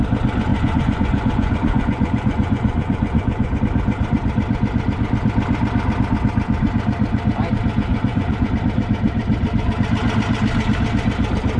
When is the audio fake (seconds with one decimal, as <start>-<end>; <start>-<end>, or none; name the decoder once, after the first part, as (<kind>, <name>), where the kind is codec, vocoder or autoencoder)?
0.5-3.6 (vocoder, Vocos); 7.9-8.5